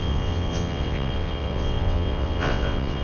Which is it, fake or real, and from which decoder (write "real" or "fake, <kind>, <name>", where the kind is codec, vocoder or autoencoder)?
fake, vocoder, WaveNeXt